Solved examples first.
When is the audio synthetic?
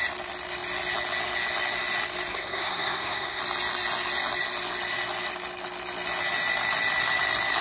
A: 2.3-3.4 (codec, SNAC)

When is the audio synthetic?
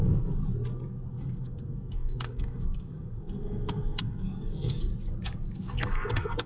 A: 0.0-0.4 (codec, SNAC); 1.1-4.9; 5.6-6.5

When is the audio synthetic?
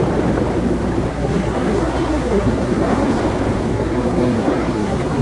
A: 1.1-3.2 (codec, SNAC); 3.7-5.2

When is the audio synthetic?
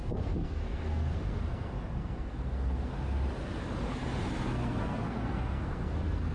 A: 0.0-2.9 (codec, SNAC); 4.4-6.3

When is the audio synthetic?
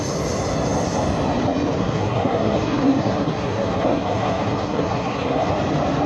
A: 1.8-5.5 (codec, SNAC)